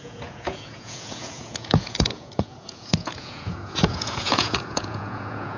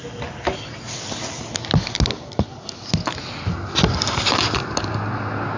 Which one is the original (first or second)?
second